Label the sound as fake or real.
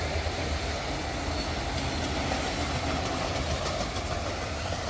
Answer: real